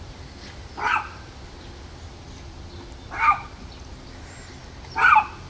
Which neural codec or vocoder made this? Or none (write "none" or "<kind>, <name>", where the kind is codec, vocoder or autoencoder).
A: none